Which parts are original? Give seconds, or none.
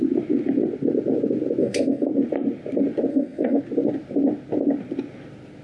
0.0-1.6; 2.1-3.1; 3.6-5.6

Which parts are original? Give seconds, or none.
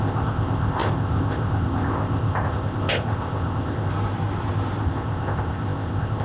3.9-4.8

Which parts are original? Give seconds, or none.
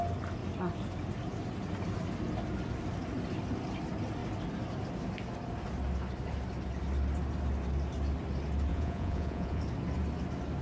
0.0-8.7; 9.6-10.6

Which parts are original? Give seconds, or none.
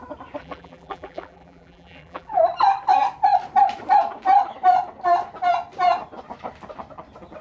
0.0-0.4; 2.4-7.4